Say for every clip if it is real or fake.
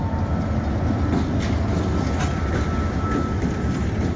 real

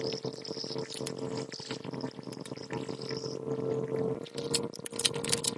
real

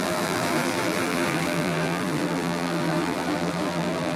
fake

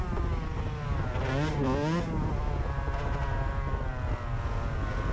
real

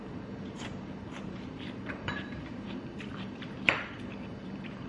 fake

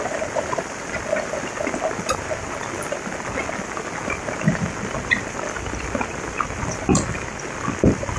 real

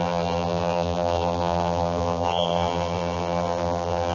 fake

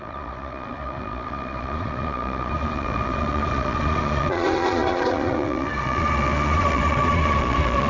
fake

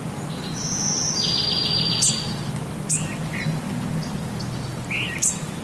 real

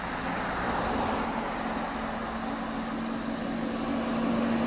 real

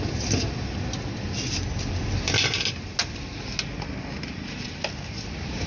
real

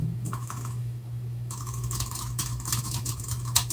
fake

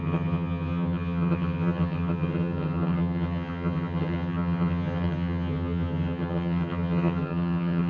fake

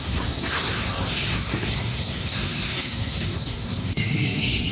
fake